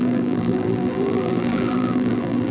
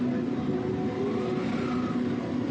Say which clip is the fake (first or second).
first